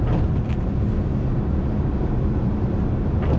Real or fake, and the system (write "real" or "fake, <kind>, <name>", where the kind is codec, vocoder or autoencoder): real